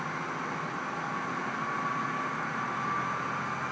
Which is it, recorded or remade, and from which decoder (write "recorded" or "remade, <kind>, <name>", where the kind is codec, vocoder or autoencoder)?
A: recorded